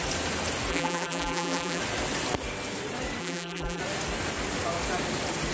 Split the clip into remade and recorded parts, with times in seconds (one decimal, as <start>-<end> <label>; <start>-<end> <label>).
0.0-0.7 recorded; 0.7-1.8 remade; 1.8-3.2 recorded; 3.2-3.8 remade; 3.8-5.5 recorded